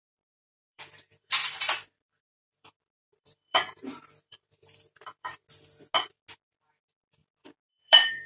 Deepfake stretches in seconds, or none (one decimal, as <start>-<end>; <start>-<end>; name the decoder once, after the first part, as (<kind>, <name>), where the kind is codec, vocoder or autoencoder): 0.0-5.3 (vocoder, BigVGAN v2); 7.7-8.3